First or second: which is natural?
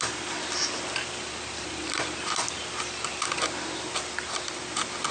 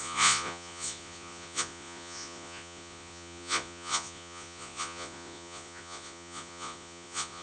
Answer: first